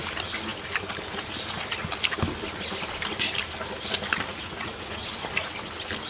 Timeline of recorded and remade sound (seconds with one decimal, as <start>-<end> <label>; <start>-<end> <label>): 0.0-4.3 recorded; 4.3-5.1 remade; 5.1-6.1 recorded